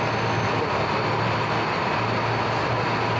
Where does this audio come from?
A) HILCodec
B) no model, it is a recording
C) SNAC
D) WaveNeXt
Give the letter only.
B